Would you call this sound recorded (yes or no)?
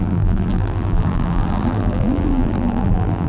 no